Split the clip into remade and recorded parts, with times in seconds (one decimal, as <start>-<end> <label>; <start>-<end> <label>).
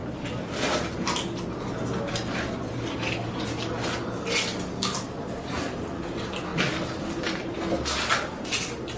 0.0-9.0 recorded